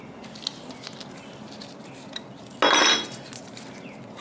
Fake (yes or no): no